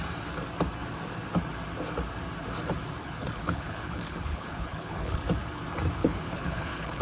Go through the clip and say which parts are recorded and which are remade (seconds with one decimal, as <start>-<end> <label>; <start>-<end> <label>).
0.0-3.0 recorded; 3.0-5.2 remade; 5.2-6.0 recorded; 6.0-7.0 remade